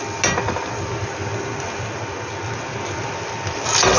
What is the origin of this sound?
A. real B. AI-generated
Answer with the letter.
A